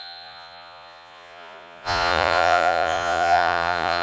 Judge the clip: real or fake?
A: fake